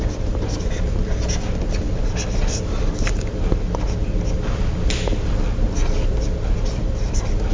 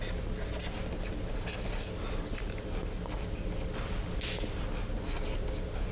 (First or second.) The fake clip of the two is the first